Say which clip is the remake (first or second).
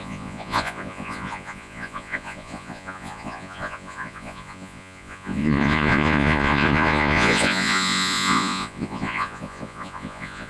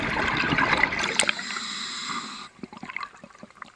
first